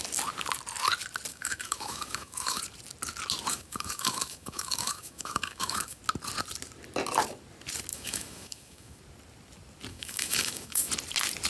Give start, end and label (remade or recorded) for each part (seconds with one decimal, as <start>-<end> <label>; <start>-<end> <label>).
0.0-1.3 recorded; 1.3-2.6 remade; 2.6-3.5 recorded; 3.5-6.0 remade; 6.0-7.9 recorded; 7.9-9.0 remade; 9.0-9.9 recorded; 9.9-10.9 remade; 10.9-11.5 recorded